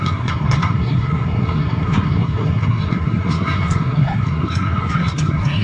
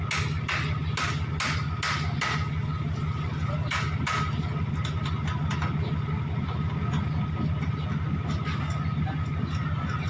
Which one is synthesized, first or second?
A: first